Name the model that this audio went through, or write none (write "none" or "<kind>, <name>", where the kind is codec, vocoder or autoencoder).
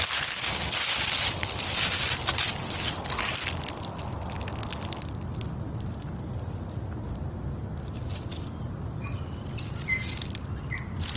none